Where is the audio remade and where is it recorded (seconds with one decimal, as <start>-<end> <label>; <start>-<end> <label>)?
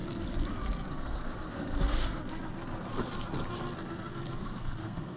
0.0-0.9 recorded; 0.9-2.2 remade; 2.2-4.4 recorded; 4.4-5.2 remade